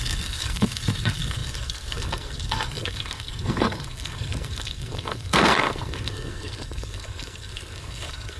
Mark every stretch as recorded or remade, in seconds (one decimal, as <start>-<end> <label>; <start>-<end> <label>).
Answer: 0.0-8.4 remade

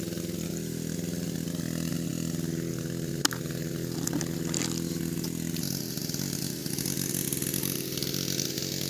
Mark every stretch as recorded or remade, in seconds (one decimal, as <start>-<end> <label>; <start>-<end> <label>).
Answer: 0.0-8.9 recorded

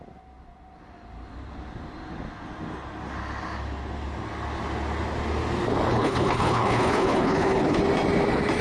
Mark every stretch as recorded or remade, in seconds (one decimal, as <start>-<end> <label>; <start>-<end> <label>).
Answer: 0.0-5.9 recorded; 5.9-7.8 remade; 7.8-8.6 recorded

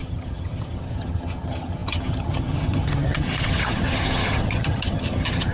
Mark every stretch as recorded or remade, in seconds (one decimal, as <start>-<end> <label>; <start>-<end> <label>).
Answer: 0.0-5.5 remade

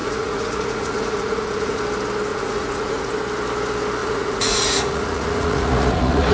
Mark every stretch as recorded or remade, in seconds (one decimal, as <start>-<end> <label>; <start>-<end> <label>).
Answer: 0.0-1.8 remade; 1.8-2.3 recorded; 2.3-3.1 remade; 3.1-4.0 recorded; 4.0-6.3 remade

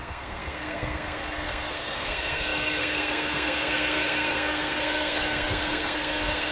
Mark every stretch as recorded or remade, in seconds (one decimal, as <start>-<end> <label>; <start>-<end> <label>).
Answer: 0.0-6.5 remade

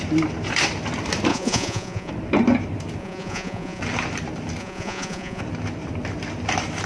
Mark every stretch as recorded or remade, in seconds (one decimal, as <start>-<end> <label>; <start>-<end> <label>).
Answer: 0.0-1.3 recorded; 1.3-2.1 remade; 2.1-3.0 recorded; 3.0-3.8 remade; 3.8-4.6 recorded; 4.6-5.4 remade; 5.4-6.9 recorded

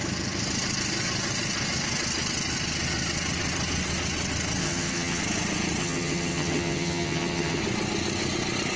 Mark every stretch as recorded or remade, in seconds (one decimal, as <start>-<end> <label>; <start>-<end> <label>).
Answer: 0.0-4.6 recorded; 4.6-5.2 remade; 5.2-5.8 recorded; 5.8-7.6 remade; 7.6-8.8 recorded